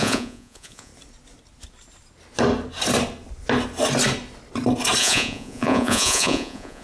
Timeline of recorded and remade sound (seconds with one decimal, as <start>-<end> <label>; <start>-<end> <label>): 0.0-0.9 remade; 0.9-5.0 recorded; 5.0-6.8 remade